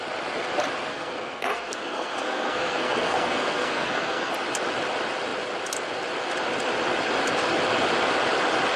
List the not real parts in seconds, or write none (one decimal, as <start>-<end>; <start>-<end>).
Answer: 0.9-4.3